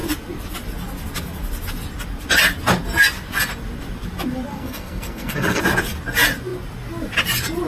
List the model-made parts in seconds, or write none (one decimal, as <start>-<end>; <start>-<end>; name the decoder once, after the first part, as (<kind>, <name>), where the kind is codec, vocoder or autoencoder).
4.5-5.6 (codec, SNAC)